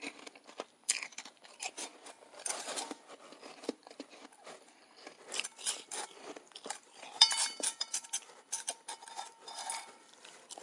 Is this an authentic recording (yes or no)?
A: no